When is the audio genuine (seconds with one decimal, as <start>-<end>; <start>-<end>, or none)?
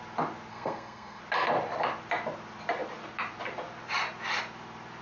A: 0.0-0.5; 1.2-5.0